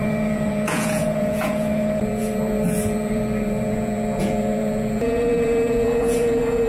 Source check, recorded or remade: remade